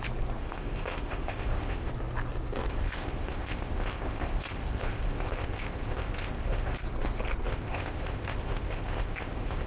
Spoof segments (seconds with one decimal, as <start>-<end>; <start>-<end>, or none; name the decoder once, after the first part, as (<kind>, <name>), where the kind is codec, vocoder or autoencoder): 0.4-1.9 (codec, ZipCodec); 2.7-6.8; 7.5-9.7

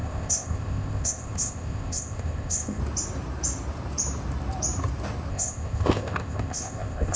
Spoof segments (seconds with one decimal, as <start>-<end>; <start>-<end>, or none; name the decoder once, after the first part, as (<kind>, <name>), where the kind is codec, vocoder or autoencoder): 0.0-2.8 (codec, ZipCodec); 5.3-7.2

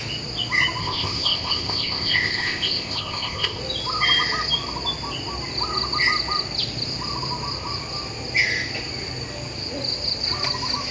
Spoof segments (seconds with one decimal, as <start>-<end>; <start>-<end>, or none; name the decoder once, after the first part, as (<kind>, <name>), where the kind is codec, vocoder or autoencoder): 0.8-3.6 (codec, ZipCodec)